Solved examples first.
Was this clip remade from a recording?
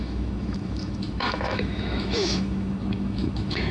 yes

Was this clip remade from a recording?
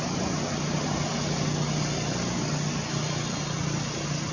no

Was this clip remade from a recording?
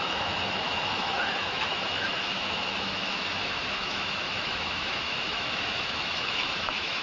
yes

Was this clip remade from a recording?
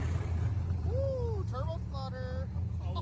no